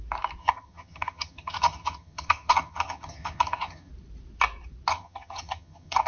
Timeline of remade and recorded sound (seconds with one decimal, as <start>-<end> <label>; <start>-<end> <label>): 0.0-0.4 recorded; 0.4-3.9 remade; 3.9-4.9 recorded; 4.9-6.1 remade